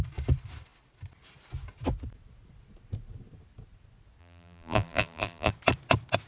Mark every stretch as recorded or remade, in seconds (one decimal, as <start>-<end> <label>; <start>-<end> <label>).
0.0-4.2 recorded; 4.2-5.5 remade; 5.5-6.3 recorded